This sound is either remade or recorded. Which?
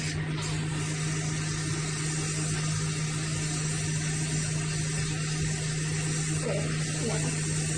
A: recorded